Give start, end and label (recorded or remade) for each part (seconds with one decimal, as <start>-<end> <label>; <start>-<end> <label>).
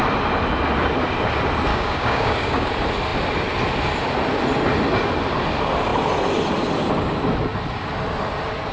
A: 0.0-1.7 recorded; 1.7-2.7 remade; 2.7-8.7 recorded